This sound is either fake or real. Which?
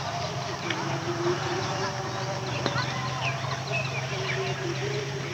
real